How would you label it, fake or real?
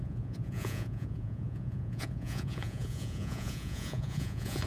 fake